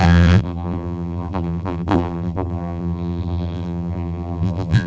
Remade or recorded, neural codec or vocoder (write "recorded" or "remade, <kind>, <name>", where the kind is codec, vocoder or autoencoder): remade, vocoder, BigVGAN v2